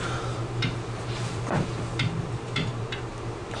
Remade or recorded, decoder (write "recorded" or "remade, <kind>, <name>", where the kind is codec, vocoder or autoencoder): remade, vocoder, BigVGAN v2